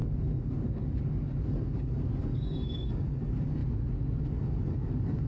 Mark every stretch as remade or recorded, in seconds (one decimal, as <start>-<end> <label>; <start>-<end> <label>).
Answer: 0.0-3.6 remade; 3.6-4.2 recorded; 4.2-5.3 remade